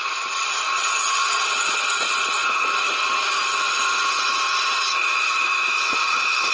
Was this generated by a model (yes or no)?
yes